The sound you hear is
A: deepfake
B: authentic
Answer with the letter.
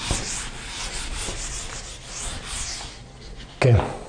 B